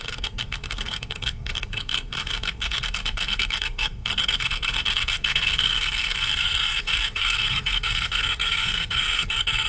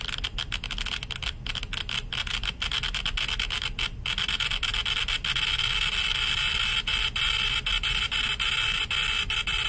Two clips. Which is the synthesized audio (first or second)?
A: first